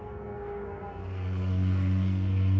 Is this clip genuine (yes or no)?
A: no